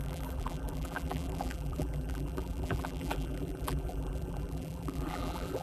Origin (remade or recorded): remade